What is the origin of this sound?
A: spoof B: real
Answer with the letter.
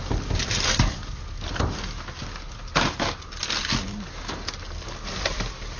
B